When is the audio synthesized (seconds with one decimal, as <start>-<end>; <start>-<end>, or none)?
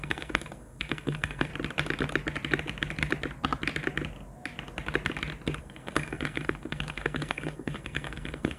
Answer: 0.0-1.5; 5.6-8.6